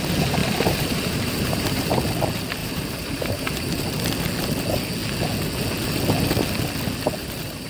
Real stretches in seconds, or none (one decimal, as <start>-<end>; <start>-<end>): 0.0-0.4; 1.9-2.6; 3.7-7.2